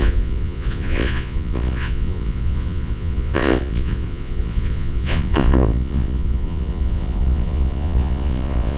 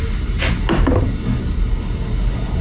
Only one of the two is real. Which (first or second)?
second